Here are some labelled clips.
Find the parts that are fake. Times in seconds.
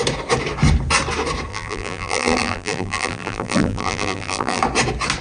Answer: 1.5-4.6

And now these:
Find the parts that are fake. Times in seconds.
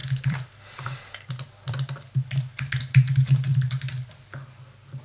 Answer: 0.0-2.8; 3.5-4.1